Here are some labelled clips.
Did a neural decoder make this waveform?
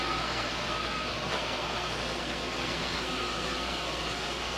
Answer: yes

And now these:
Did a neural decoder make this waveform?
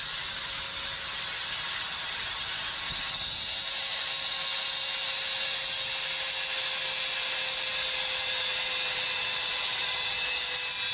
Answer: no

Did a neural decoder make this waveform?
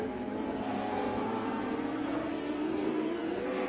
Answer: yes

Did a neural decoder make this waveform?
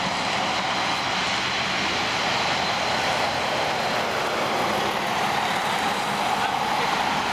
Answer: no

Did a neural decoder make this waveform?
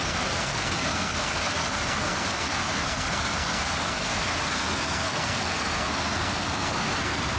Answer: yes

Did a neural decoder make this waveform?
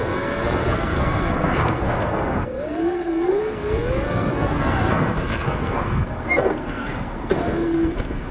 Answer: yes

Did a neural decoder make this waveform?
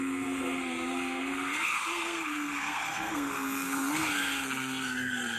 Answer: yes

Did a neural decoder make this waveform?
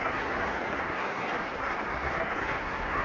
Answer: yes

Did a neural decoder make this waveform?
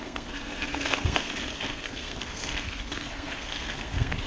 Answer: yes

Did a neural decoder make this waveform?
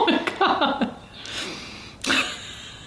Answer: no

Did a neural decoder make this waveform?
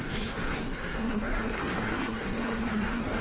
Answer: yes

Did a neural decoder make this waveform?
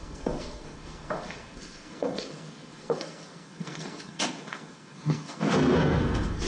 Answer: yes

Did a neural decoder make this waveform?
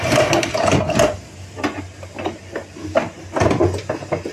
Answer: no